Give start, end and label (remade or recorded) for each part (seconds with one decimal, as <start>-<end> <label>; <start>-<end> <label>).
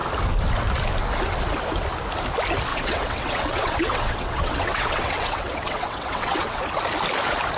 0.0-2.7 recorded; 2.7-6.6 remade; 6.6-7.6 recorded